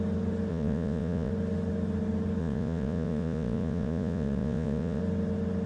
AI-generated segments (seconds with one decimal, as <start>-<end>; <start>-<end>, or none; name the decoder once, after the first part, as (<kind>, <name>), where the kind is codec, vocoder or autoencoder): 0.5-1.3 (vocoder, Vocos); 2.4-5.0